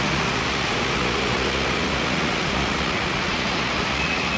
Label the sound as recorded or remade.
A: remade